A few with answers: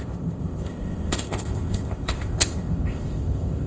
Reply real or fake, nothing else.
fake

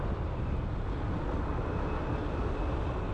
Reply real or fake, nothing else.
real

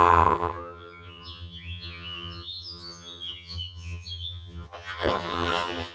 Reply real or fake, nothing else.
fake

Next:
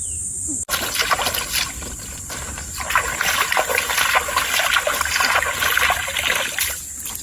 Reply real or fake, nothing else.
real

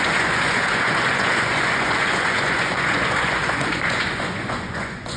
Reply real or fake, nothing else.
fake